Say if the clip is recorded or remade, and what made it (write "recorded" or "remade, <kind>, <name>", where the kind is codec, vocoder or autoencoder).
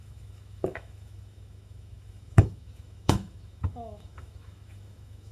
remade, autoencoder, DAC-VAE